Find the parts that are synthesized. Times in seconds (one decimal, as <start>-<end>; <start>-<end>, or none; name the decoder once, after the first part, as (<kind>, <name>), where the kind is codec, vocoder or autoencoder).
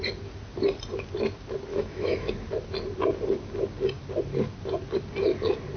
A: 1.7-2.3 (autoencoder, DAC-VAE)